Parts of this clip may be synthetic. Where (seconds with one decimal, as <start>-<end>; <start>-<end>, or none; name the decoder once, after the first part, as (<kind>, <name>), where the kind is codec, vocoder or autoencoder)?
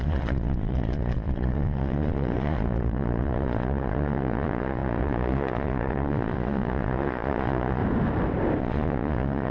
0.0-7.8 (vocoder, Vocos); 8.6-9.5